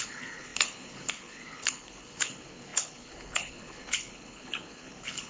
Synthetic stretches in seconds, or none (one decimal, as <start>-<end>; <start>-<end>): 0.0-5.3